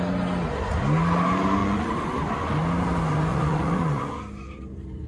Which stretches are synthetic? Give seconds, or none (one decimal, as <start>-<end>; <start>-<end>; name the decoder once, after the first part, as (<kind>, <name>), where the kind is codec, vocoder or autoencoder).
1.6-2.5 (vocoder, Vocos); 3.3-4.2